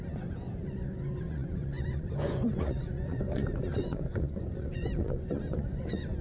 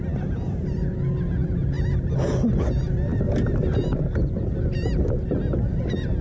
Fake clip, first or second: first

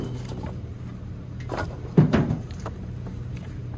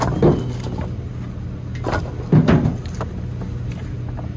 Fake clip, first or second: first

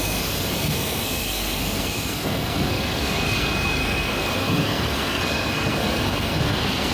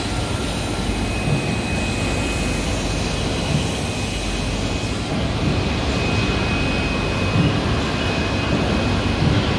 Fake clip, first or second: first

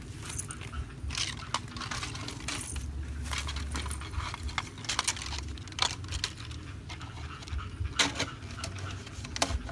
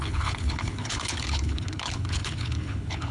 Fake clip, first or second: second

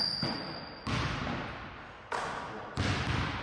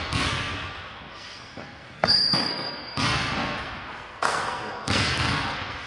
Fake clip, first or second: second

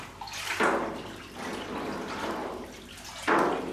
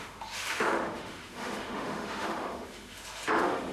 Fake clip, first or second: second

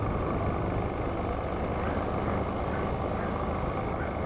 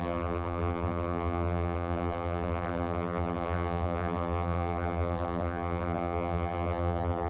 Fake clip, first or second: second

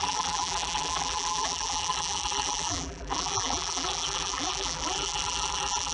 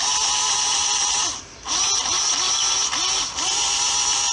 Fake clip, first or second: first